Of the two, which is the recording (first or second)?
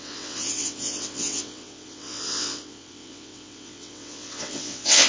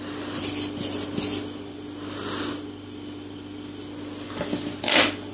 second